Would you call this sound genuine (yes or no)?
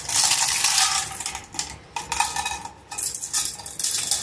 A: yes